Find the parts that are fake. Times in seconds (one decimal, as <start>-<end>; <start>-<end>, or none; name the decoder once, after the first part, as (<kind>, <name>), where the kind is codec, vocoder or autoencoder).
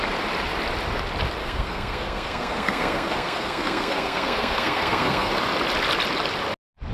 1.4-5.3 (codec, SNAC)